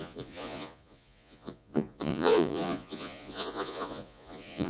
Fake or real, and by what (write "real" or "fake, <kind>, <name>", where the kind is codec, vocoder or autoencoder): fake, vocoder, Vocos